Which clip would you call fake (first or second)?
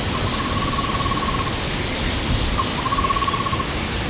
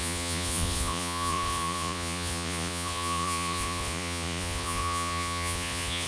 second